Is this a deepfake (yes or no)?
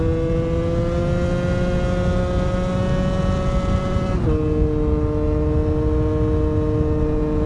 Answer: no